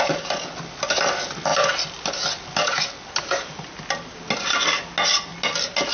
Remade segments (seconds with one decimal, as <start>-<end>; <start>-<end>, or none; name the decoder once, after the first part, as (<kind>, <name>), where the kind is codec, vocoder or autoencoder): none